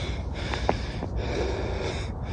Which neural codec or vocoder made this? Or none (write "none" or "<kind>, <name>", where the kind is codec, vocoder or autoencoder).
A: none